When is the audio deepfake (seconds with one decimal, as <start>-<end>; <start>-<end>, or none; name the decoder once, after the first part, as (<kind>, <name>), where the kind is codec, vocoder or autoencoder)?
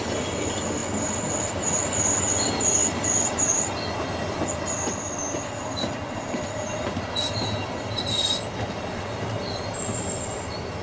none